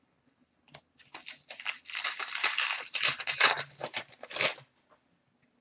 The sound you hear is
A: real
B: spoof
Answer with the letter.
A